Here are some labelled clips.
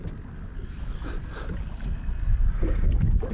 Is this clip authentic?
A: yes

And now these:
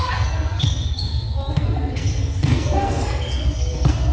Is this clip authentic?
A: no